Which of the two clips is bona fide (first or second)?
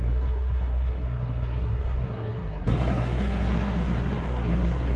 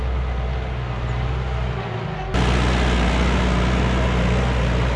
second